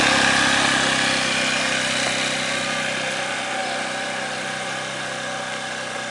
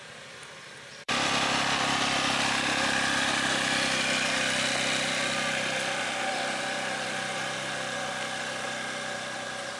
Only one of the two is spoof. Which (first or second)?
second